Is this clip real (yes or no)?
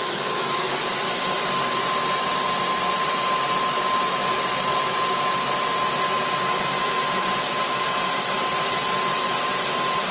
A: yes